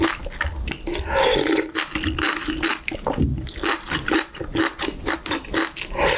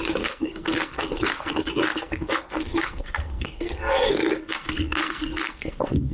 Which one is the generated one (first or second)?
second